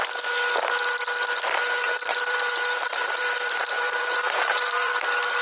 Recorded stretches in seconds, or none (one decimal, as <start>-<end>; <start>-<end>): 0.0-1.8; 5.0-5.4